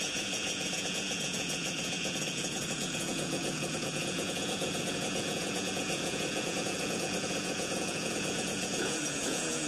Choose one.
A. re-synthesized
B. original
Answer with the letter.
A